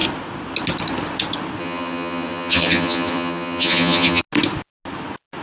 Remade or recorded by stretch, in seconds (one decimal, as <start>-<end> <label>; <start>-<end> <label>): 0.0-1.6 recorded; 1.6-4.2 remade; 4.2-5.4 recorded